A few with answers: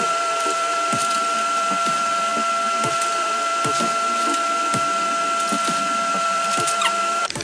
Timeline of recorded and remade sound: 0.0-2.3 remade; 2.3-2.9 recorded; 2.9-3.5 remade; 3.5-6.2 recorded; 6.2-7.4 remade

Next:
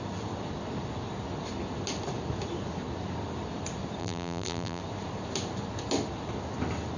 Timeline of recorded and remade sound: 0.0-4.0 recorded; 4.0-4.8 remade; 4.8-7.0 recorded

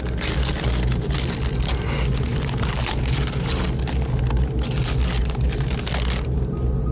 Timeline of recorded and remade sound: 0.0-2.3 recorded; 2.3-3.6 remade; 3.6-5.2 recorded; 5.2-5.7 remade; 5.7-6.9 recorded